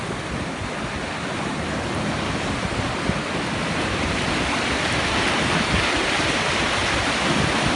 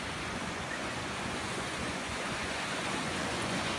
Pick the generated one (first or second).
second